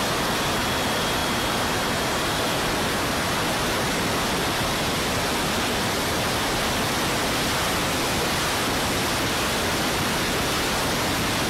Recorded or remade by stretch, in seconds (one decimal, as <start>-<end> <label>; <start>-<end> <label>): 0.0-1.2 recorded; 1.2-2.7 remade; 2.7-11.5 recorded